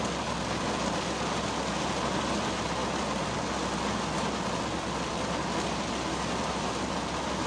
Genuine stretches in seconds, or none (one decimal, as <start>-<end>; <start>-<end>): 0.0-7.5